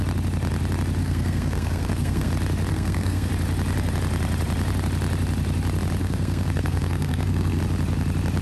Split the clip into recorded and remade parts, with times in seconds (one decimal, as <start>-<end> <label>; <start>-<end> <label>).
0.0-1.0 recorded; 1.0-2.3 remade; 2.3-2.7 recorded; 2.7-3.3 remade; 3.3-6.0 recorded; 6.0-7.6 remade; 7.6-8.4 recorded